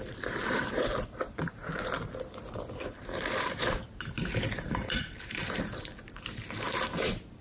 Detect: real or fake fake